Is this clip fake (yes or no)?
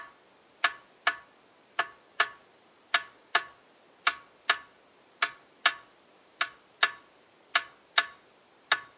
no